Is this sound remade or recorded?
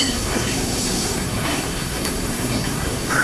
remade